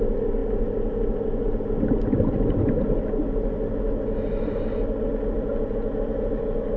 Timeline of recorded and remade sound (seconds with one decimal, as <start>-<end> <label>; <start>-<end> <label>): 0.0-6.8 recorded